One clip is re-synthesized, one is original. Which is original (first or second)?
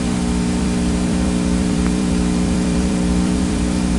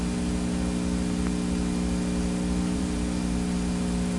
second